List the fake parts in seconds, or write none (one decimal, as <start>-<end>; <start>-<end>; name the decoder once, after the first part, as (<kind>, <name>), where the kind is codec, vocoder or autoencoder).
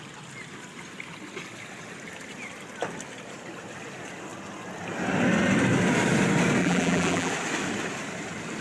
6.6-7.3 (vocoder, BigVGAN v2)